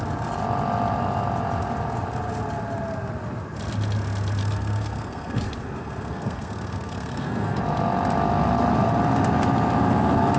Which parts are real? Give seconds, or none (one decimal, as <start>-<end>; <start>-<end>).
0.0-4.4; 7.6-10.4